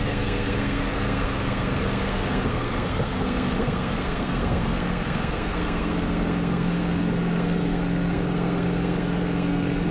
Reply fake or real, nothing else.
fake